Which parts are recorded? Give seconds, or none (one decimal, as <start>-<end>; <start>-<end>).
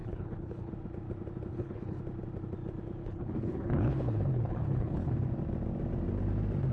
0.7-1.5; 2.0-3.0; 5.1-6.7